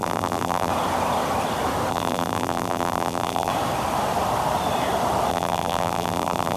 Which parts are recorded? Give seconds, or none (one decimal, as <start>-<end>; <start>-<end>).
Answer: 0.7-1.9; 3.5-5.3